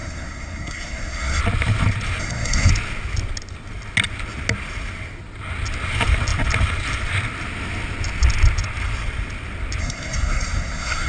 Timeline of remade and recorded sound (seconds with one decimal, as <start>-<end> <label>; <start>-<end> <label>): 0.0-1.4 remade; 1.4-2.2 recorded; 2.2-2.7 remade; 2.7-9.8 recorded; 9.8-11.1 remade